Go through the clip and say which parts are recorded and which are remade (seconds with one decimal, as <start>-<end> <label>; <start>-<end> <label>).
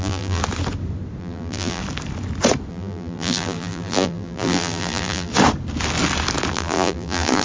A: 0.0-0.4 remade; 0.4-1.2 recorded; 1.2-1.8 remade; 1.8-2.7 recorded; 2.7-5.3 remade; 5.3-6.5 recorded; 6.5-7.4 remade